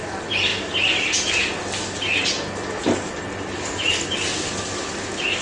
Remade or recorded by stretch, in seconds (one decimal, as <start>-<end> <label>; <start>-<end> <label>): 0.0-5.4 recorded